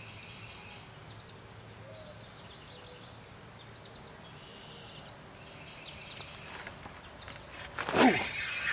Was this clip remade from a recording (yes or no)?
no